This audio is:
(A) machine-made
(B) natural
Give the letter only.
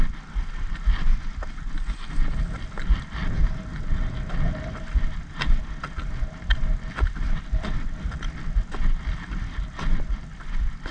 B